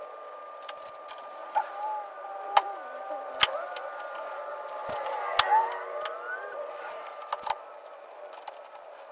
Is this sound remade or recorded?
recorded